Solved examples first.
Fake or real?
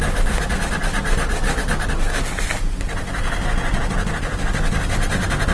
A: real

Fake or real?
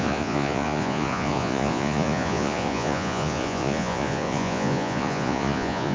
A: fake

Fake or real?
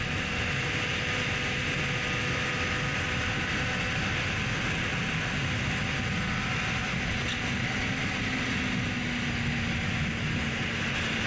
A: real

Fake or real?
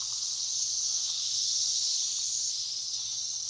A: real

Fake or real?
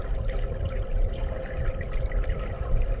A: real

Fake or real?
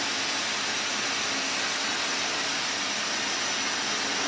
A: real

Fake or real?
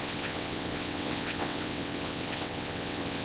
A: fake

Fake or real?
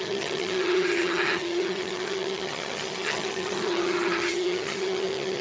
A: fake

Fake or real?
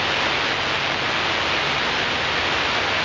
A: real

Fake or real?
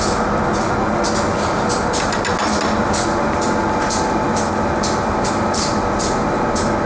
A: real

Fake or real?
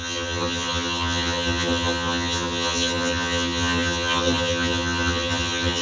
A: fake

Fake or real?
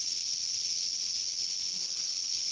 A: real